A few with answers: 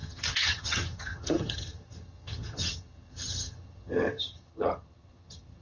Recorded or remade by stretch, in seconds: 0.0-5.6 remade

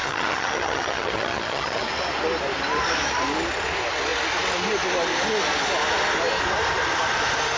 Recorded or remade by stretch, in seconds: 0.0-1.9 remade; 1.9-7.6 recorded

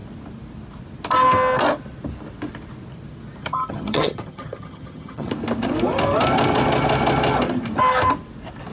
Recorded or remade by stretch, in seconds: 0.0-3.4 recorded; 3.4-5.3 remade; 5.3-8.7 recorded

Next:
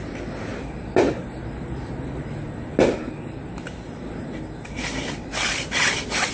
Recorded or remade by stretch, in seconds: 0.0-6.3 recorded

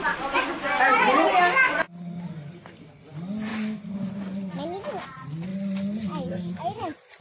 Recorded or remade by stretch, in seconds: 0.0-7.2 recorded

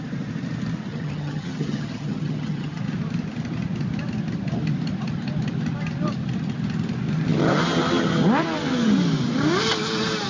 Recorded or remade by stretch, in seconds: 0.0-0.9 recorded; 0.9-2.8 remade; 2.8-10.3 recorded